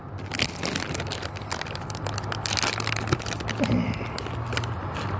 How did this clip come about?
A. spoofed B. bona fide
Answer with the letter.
B